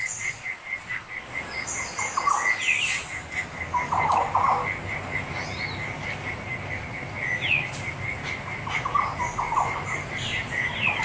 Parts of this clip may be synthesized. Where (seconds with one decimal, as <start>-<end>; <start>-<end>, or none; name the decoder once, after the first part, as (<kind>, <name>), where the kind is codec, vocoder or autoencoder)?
9.2-10.4 (vocoder, BigVGAN v2)